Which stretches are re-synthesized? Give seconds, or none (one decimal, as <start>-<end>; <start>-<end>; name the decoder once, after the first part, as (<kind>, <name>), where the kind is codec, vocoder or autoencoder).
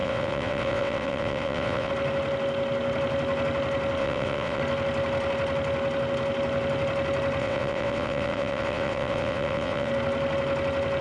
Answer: 0.0-1.9 (vocoder, WaveNeXt); 4.0-4.6; 7.4-9.9